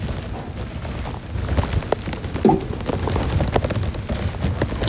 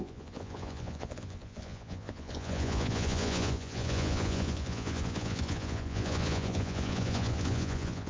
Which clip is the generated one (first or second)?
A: second